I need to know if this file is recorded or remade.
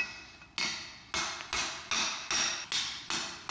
recorded